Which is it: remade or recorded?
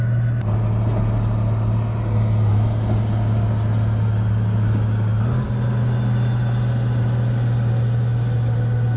recorded